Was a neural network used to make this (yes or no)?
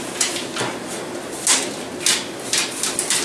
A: no